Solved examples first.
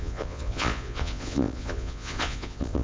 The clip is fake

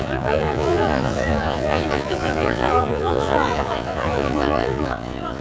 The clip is fake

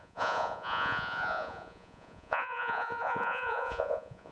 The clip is fake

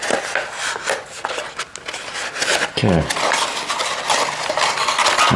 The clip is real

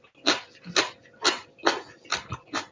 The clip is real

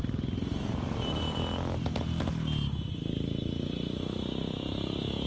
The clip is real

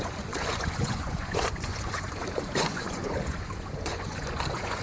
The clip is fake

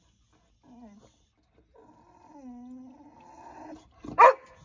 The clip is real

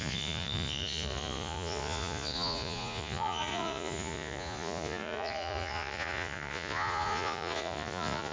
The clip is fake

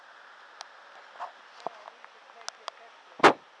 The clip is real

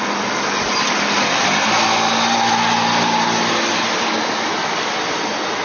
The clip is real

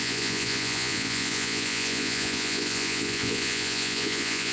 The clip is fake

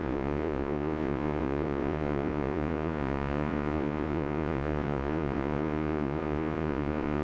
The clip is fake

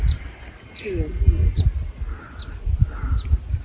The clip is real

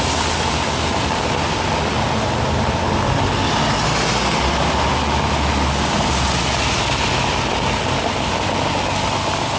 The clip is real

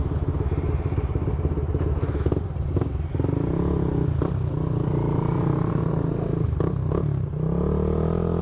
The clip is real